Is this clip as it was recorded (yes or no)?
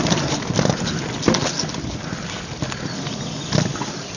yes